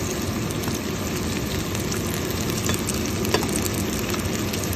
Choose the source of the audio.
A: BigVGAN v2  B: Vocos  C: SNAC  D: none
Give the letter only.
D